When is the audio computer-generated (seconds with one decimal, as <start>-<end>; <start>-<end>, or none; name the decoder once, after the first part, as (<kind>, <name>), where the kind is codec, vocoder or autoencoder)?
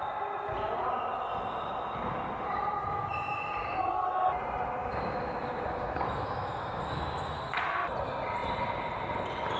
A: 2.8-3.5 (autoencoder, DAC-VAE); 4.8-7.6